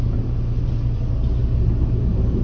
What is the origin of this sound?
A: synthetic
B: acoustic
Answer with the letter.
B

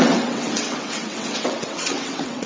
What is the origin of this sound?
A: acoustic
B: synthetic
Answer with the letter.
B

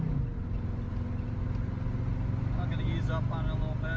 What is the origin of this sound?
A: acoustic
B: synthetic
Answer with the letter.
A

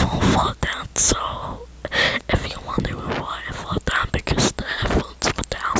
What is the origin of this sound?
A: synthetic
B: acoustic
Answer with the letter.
B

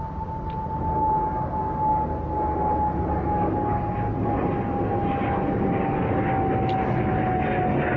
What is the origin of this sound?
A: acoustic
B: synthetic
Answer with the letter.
A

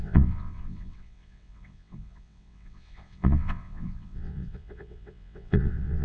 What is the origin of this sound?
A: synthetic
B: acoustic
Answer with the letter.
A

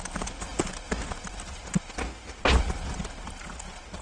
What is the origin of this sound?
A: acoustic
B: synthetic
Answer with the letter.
A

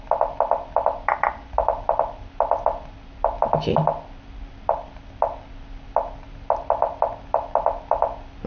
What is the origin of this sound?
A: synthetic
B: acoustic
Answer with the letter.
B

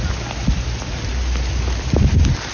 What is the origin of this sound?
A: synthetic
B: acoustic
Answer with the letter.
B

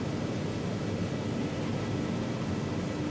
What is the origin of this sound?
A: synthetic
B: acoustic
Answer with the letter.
B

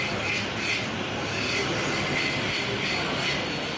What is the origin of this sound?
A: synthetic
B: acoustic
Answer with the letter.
B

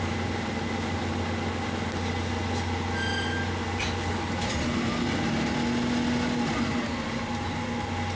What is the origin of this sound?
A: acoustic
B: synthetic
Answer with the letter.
A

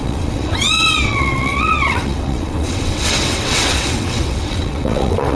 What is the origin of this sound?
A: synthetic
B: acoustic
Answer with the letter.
A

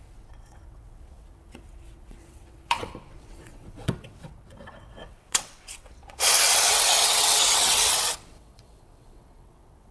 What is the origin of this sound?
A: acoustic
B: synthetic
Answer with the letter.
B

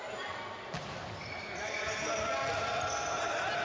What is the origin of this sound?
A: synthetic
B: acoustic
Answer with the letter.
B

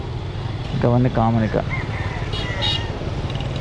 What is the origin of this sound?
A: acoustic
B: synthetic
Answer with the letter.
A